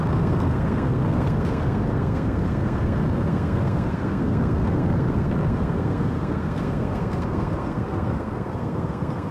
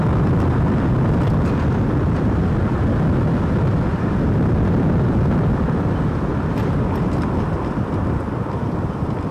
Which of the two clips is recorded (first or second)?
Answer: second